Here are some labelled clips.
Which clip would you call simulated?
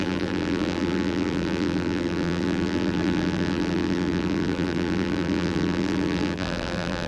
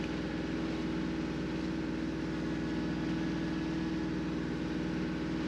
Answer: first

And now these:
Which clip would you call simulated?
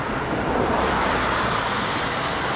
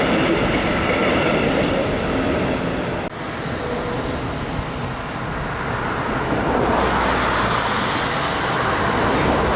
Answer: first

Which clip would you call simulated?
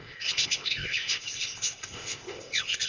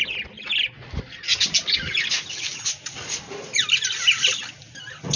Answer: first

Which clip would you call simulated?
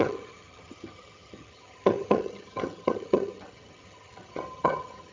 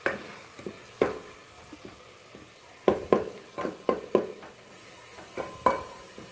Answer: first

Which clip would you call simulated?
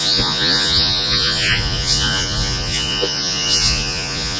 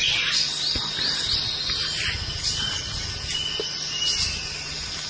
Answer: first